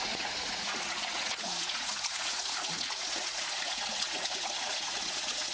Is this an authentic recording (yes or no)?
no